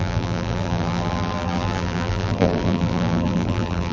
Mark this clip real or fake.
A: fake